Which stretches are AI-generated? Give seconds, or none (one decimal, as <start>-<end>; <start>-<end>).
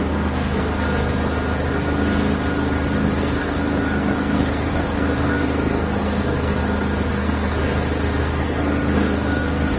0.0-0.7; 3.2-6.6; 7.1-7.6; 8.2-9.8